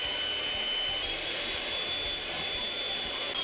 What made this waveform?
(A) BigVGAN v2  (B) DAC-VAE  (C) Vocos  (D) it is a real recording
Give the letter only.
D